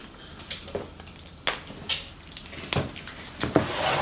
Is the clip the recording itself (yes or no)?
yes